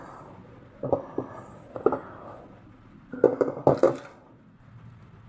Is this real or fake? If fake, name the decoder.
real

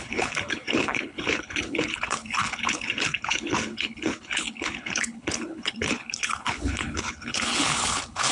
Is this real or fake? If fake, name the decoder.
fake, codec, HILCodec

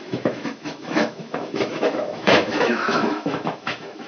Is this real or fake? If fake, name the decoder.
fake, autoencoder, DAC-VAE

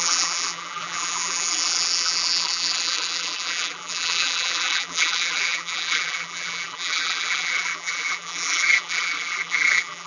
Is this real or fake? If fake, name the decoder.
fake, vocoder, BigVGAN v2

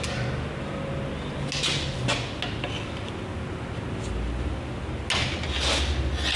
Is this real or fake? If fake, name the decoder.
real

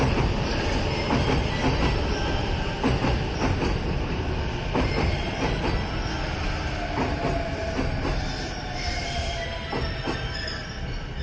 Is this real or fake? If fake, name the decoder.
real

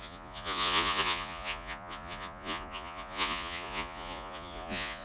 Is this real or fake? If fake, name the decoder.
fake, vocoder, Vocos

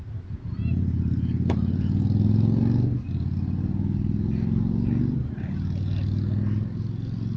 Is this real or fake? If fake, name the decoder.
real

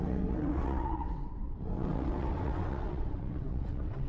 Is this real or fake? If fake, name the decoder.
fake, vocoder, WaveNeXt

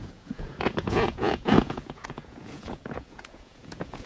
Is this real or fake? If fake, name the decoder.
fake, vocoder, Vocos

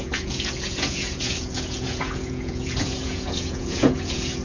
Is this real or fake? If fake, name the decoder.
fake, vocoder, Vocos